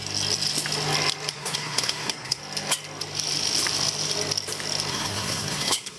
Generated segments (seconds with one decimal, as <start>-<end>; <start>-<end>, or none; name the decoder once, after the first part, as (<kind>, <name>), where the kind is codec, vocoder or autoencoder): 1.3-2.4 (codec, SNAC); 4.9-6.0